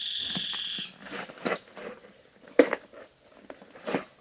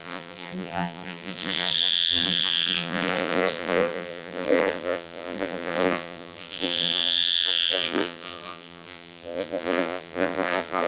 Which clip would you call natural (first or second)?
first